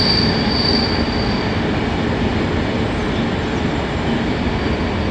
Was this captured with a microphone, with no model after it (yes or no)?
yes